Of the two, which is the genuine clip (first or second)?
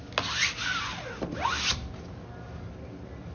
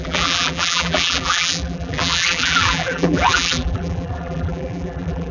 first